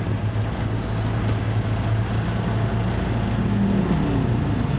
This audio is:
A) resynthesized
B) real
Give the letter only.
B